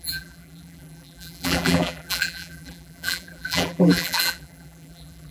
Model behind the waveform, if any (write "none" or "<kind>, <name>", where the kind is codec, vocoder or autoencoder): vocoder, BigVGAN v2